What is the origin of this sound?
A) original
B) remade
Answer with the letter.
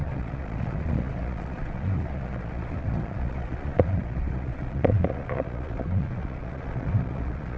B